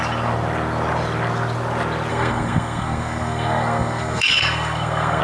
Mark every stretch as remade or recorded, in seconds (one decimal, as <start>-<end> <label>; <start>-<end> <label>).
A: 0.0-2.1 recorded; 2.1-5.2 remade